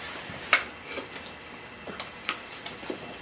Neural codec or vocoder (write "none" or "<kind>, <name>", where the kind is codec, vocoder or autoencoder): none